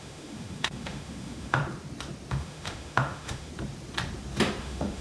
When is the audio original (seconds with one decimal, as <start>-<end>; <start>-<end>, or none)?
1.6-2.3; 3.5-4.6